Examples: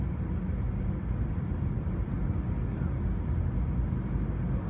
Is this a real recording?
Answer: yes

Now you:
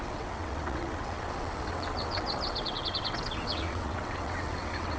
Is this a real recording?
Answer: no